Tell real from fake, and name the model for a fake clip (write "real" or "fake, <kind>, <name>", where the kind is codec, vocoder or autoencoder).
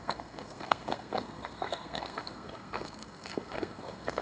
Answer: fake, codec, SNAC